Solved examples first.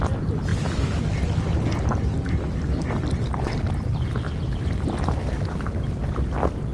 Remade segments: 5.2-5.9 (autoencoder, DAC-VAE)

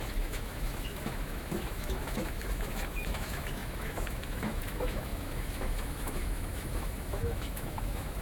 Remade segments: 0.0-8.2 (autoencoder, DAC-VAE)

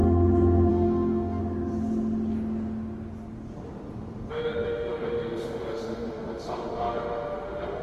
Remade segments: 0.7-1.4 (autoencoder, DAC-VAE); 4.3-7.8

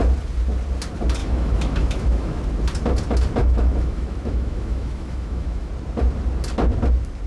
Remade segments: 1.2-2.4 (autoencoder, DAC-VAE); 3.4-5.7

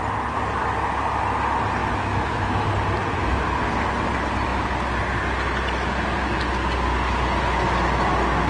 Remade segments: 1.8-2.7 (autoencoder, DAC-VAE)

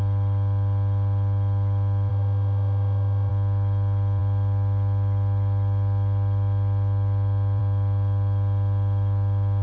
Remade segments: 2.1-3.3 (autoencoder, DAC-VAE)

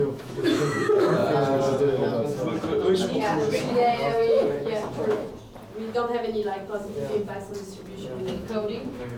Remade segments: 0.0-1.2 (autoencoder, DAC-VAE); 1.8-2.7; 3.2-5.3; 8.2-9.2